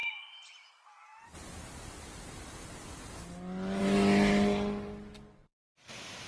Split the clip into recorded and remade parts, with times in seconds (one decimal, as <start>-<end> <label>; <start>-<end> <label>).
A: 0.0-5.5 recorded; 5.5-6.3 remade